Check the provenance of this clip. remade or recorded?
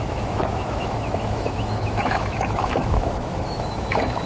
remade